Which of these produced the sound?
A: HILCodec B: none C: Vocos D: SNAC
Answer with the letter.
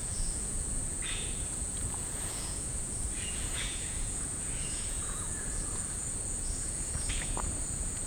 C